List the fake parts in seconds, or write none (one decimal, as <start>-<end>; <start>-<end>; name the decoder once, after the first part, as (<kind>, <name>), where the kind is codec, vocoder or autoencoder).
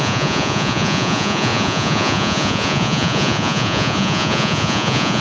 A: 0.0-5.2 (vocoder, Vocos)